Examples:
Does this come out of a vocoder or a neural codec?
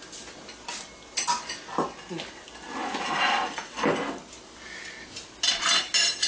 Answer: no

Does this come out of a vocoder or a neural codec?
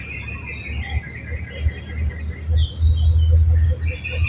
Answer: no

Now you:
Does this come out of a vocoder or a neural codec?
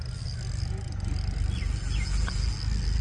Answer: no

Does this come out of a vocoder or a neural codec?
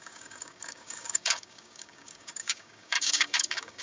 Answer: yes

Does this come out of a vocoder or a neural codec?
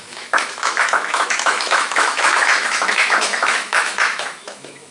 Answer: yes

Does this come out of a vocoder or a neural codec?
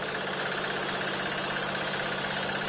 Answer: no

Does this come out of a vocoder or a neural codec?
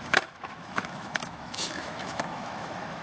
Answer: yes